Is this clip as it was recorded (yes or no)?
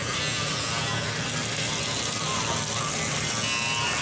yes